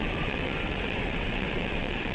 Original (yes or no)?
no